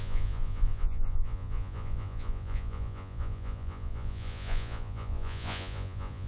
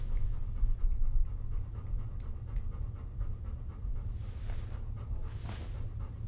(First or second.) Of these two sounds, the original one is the second